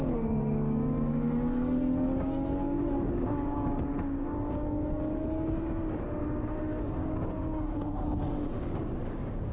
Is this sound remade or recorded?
remade